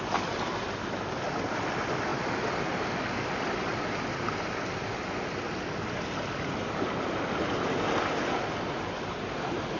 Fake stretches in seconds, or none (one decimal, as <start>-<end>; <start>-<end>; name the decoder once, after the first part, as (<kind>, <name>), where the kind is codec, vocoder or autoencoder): none